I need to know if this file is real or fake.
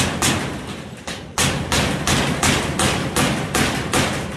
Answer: real